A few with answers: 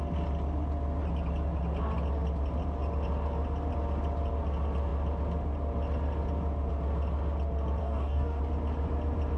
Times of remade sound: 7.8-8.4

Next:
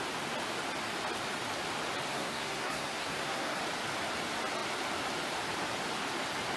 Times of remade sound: 2.1-3.6

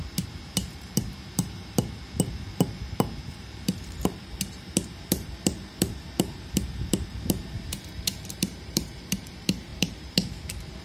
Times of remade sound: 0.0-10.8

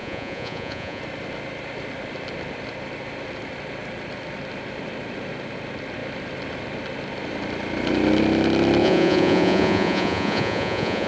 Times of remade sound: 0.0-1.0; 8.8-11.1

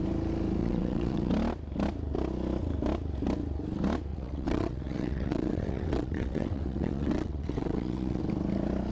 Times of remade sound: 0.6-1.3; 4.1-8.2

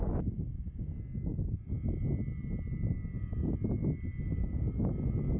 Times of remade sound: none